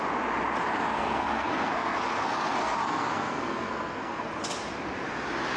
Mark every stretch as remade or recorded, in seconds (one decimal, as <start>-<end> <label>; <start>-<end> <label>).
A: 0.0-0.9 recorded; 0.9-4.3 remade; 4.3-5.6 recorded